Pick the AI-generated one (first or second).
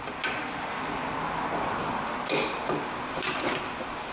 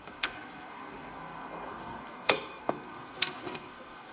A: second